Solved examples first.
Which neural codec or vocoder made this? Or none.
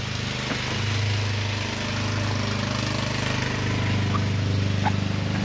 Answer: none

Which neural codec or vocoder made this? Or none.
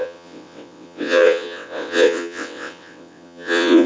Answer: vocoder, WaveNeXt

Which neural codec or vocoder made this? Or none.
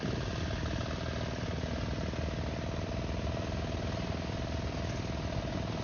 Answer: none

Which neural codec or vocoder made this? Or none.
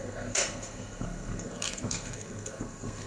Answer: codec, SNAC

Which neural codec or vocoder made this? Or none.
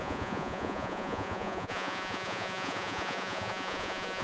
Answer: vocoder, Vocos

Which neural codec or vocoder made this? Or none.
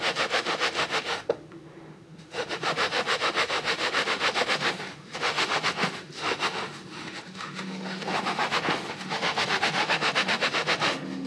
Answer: autoencoder, DAC-VAE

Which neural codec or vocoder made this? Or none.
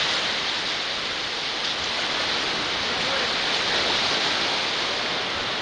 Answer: none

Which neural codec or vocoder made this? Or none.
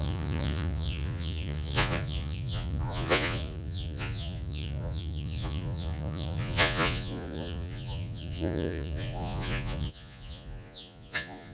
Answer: vocoder, Vocos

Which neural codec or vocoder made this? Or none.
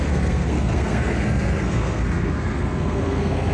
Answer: codec, SNAC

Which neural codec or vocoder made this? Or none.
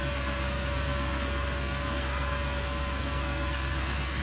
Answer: codec, SNAC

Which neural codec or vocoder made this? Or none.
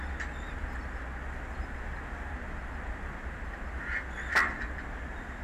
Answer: none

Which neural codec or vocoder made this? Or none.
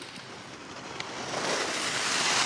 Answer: none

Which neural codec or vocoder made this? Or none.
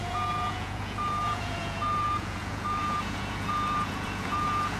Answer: vocoder, Vocos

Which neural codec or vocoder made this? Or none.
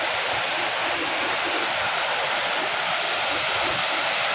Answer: none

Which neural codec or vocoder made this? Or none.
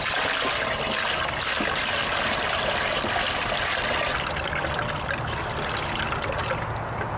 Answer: none